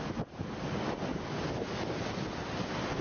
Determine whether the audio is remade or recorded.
recorded